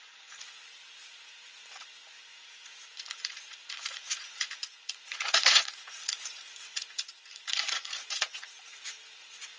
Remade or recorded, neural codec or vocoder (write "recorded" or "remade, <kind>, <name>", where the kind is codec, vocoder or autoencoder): remade, vocoder, Vocos